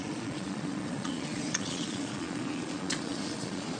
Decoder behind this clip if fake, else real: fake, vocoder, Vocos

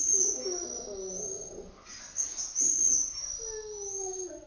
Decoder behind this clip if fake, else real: real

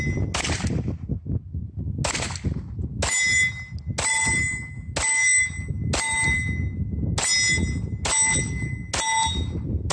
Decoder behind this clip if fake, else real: real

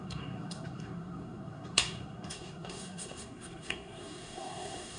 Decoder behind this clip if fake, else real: fake, codec, SNAC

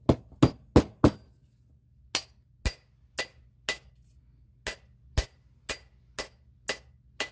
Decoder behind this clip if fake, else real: real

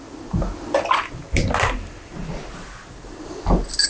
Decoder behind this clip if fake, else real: real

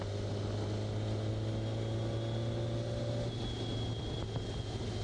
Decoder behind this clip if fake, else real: real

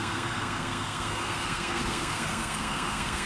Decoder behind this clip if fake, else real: fake, codec, SNAC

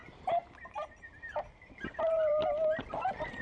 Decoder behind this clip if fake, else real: fake, vocoder, BigVGAN v2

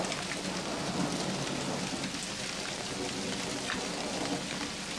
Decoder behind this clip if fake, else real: real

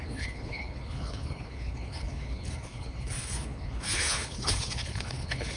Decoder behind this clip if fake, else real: fake, codec, HILCodec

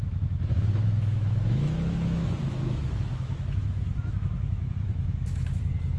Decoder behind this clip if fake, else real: fake, autoencoder, DAC-VAE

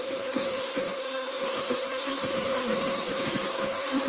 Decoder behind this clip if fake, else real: fake, codec, SNAC